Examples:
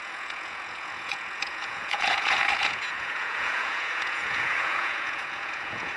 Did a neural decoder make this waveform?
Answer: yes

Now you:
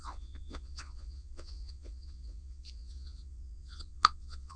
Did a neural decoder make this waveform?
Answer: yes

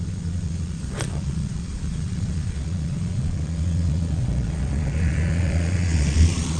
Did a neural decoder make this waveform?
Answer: yes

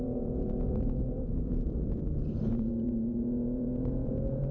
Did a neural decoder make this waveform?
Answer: yes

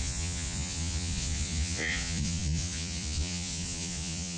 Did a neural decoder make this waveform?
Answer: yes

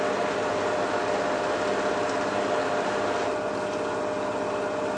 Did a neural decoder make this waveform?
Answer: no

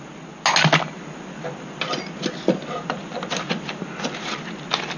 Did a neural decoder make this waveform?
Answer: no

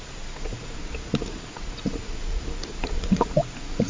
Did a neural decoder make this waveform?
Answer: yes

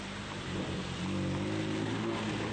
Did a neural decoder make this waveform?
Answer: no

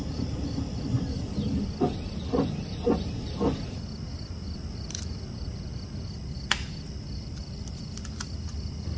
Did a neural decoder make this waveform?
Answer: no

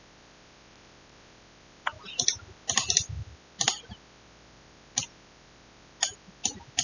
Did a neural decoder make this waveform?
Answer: no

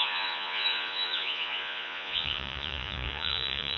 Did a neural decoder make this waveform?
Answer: yes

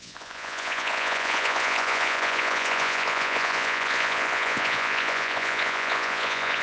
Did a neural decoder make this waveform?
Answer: yes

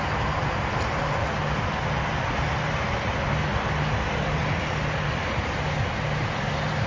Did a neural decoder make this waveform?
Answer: no